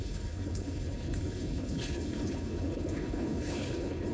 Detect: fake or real fake